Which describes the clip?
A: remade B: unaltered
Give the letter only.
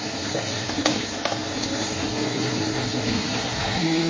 A